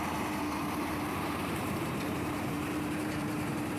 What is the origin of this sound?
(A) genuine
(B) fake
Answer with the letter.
B